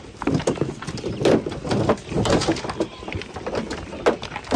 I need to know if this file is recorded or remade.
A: recorded